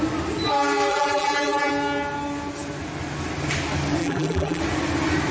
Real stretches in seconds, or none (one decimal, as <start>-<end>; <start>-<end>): 0.0-0.9; 1.7-4.0; 4.6-5.3